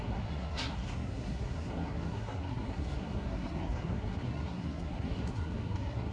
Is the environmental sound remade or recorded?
remade